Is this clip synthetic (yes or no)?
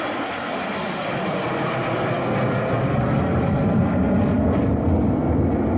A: no